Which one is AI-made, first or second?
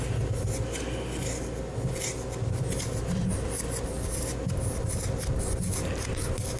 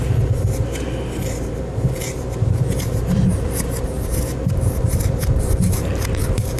second